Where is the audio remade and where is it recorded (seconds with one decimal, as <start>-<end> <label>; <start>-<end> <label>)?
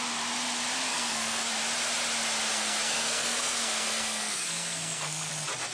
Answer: 0.0-0.9 recorded; 0.9-1.5 remade; 1.5-2.5 recorded; 2.5-5.3 remade; 5.3-5.7 recorded